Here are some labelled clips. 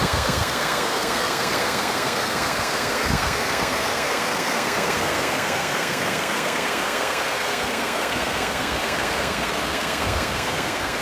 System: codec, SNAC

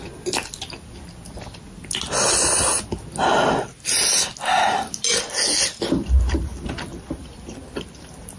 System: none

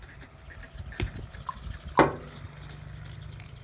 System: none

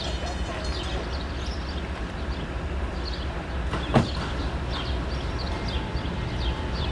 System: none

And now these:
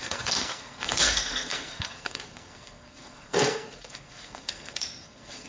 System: codec, SNAC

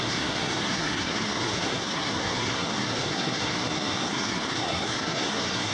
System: codec, SNAC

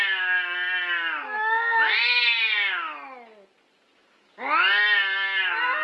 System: none